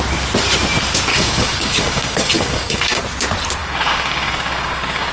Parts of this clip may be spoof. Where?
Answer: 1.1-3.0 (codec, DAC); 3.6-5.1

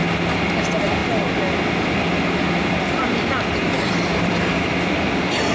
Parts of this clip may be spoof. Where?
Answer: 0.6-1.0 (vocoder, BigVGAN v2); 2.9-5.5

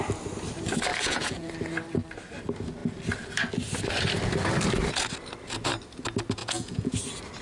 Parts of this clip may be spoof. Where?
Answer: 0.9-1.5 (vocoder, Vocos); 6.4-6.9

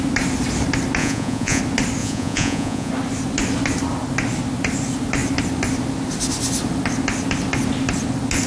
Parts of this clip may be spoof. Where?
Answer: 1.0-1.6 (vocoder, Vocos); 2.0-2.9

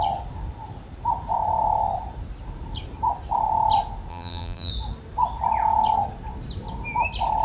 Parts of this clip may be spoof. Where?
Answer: 4.1-4.7 (vocoder, BigVGAN v2)